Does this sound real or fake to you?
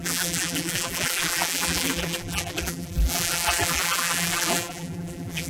fake